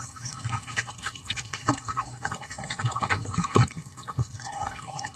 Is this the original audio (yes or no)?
no